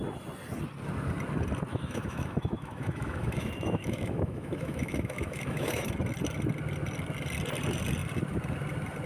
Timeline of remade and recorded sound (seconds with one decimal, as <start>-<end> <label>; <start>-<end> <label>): 0.0-1.7 recorded; 1.7-5.9 remade; 5.9-9.1 recorded